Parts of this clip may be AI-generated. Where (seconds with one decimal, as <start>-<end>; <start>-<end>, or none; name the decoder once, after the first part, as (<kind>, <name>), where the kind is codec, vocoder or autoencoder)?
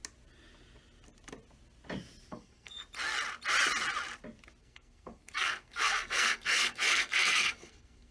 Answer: 2.3-2.8 (codec, SNAC); 4.6-8.1